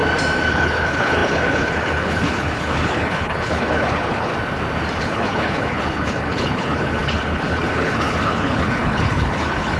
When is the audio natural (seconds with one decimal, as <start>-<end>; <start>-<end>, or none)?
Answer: 0.0-0.5; 4.3-5.0